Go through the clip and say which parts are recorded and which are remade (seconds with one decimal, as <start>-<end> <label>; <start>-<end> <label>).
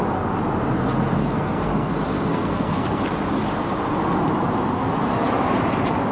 0.0-1.2 recorded; 1.2-1.9 remade; 1.9-2.3 recorded; 2.3-3.0 remade; 3.0-6.1 recorded